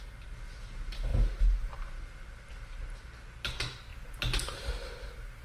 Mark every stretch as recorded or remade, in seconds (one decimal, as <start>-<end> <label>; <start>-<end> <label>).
0.0-3.9 recorded; 3.9-4.7 remade; 4.7-5.4 recorded